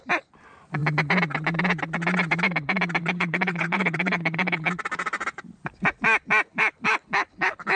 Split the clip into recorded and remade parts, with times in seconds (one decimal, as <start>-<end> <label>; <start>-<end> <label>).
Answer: 0.0-3.0 recorded; 3.0-4.7 remade; 4.7-6.5 recorded; 6.5-7.8 remade